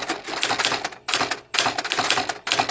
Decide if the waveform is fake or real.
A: real